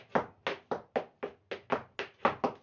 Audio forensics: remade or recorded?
recorded